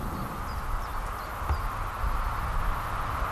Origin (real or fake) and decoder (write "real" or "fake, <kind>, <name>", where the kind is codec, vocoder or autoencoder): real